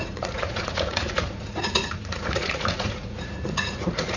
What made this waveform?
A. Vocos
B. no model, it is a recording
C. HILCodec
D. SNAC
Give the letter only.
A